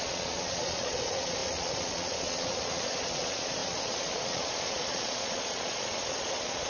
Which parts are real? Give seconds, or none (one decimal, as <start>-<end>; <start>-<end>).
none